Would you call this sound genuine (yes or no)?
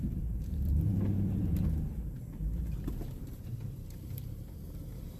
no